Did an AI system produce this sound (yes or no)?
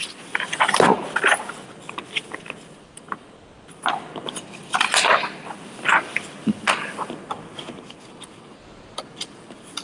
no